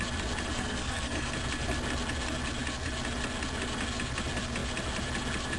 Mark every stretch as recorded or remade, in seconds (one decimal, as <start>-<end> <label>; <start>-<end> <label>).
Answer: 0.0-0.5 recorded; 0.5-1.3 remade; 1.3-5.6 recorded